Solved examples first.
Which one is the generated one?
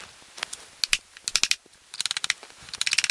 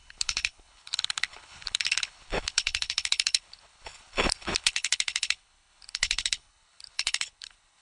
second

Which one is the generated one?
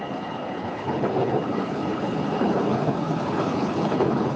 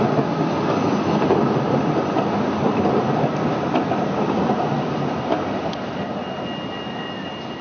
first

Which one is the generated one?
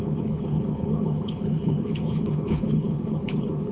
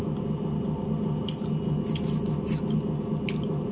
first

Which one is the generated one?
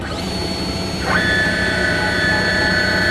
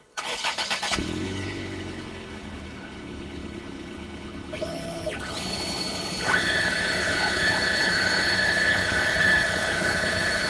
second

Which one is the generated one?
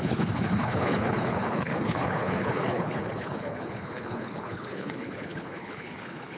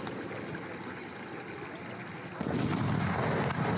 first